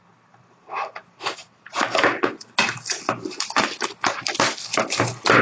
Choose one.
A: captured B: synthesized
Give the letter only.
A